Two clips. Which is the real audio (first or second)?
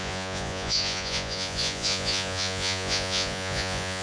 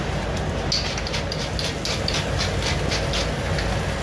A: second